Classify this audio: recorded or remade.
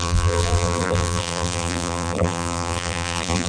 remade